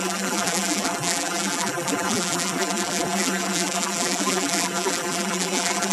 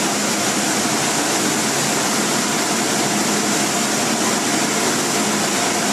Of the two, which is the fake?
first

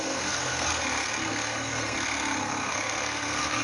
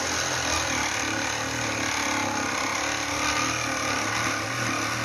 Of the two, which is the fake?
first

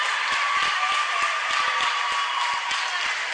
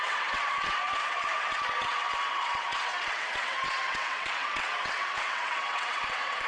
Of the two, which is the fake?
second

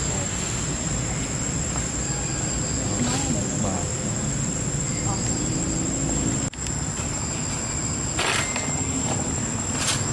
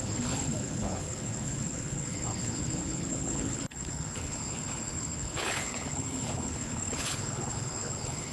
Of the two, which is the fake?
second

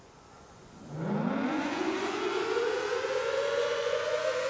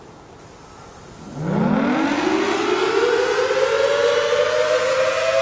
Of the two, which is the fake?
first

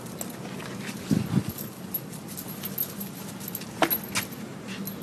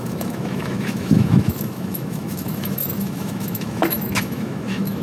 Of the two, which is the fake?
second